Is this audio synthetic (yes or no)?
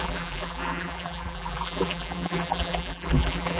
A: yes